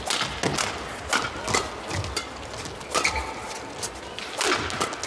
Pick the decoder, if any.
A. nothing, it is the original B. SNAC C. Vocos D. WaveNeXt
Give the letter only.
A